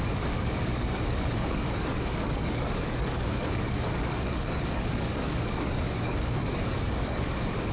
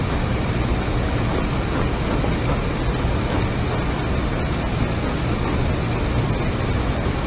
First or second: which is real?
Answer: second